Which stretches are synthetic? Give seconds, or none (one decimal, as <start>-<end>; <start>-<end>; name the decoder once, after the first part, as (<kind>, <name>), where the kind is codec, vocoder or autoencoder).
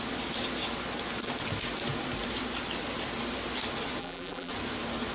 4.0-4.5 (vocoder, BigVGAN v2)